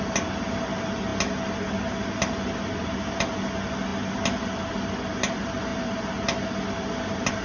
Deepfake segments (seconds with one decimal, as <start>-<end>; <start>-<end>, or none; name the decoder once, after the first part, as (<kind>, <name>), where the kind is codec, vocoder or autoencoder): none